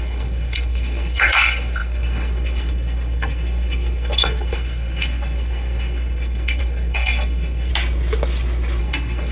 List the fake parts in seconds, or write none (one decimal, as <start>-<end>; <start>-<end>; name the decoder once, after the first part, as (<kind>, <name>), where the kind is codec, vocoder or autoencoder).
0.0-7.7 (codec, SNAC); 8.8-9.3